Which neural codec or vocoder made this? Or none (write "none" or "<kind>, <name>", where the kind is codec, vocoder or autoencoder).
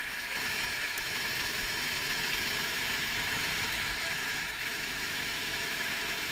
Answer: autoencoder, DAC-VAE